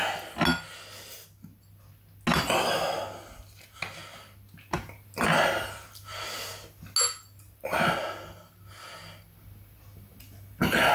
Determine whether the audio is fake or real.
real